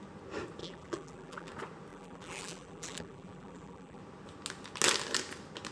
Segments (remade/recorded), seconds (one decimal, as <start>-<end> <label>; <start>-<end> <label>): 0.0-0.6 recorded; 0.6-1.5 remade; 1.5-1.9 recorded; 1.9-4.0 remade; 4.0-5.7 recorded